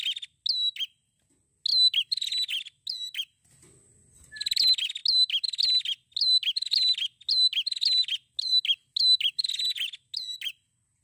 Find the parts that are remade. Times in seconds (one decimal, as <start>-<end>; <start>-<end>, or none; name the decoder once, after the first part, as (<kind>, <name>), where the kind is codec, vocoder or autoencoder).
none